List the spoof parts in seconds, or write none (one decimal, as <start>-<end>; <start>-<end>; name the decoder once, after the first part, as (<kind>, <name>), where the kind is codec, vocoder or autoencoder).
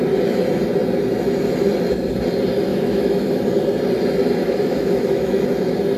2.7-3.4 (autoencoder, DAC-VAE); 4.4-5.4